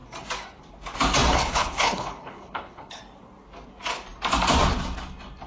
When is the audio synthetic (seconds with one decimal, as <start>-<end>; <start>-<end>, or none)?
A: 1.3-3.0